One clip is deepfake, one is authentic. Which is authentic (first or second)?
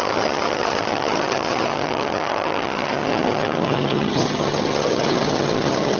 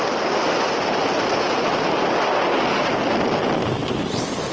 second